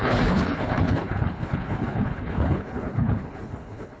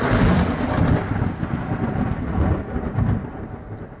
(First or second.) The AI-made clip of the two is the first